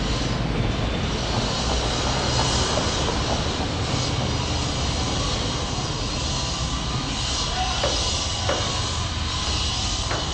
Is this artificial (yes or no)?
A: no